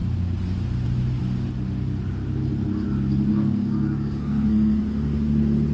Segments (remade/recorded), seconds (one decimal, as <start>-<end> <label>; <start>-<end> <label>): 0.0-3.3 recorded; 3.3-4.8 remade; 4.8-5.7 recorded